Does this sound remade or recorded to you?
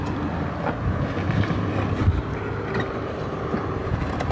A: recorded